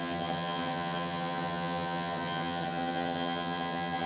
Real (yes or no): no